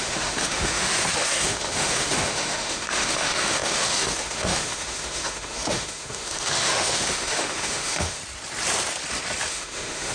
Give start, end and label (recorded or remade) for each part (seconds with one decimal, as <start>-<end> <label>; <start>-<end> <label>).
0.0-8.2 remade; 8.2-9.5 recorded; 9.5-10.1 remade